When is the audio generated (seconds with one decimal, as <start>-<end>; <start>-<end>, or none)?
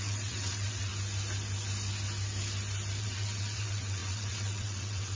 0.0-0.9; 3.0-5.2